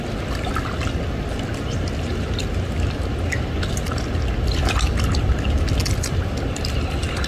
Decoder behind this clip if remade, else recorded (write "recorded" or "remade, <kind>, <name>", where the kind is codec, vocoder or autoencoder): recorded